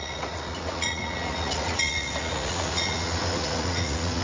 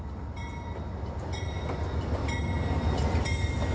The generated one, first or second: first